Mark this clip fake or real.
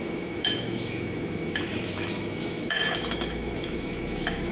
fake